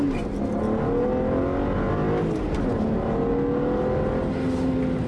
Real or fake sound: real